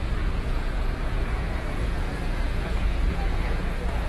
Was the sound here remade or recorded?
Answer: remade